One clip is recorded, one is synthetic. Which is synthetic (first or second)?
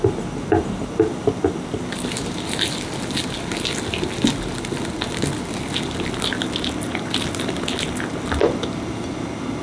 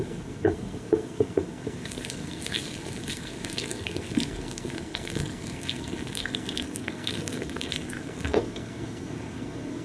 second